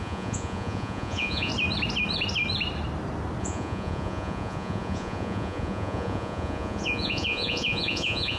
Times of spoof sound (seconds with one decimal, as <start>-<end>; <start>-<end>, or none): 0.0-1.5; 3.4-8.4